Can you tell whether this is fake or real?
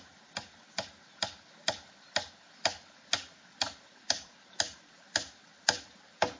real